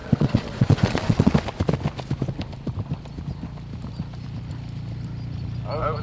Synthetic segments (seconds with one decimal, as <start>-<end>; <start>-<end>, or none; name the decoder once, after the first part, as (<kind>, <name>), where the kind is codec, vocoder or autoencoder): 0.0-1.3 (vocoder, Vocos)